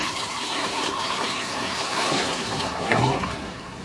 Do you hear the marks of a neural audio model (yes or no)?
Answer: yes